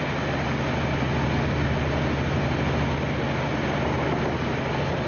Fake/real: real